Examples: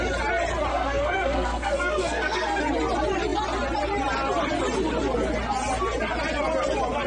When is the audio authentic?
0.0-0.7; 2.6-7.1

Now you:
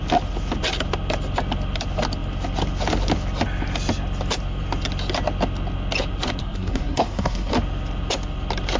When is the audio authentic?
0.0-6.4; 7.5-8.8

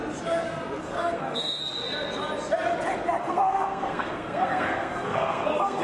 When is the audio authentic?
0.0-0.8; 1.6-3.2

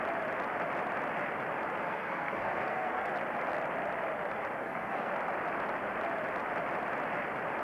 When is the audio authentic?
0.0-1.8; 3.1-4.6; 5.1-7.6